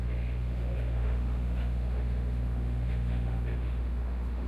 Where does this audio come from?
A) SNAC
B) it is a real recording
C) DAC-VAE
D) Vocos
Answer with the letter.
C